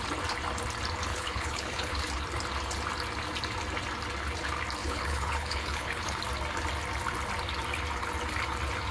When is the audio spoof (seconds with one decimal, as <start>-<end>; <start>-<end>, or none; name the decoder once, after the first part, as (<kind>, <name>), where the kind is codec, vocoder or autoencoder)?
1.1-2.0 (codec, HILCodec); 4.8-6.2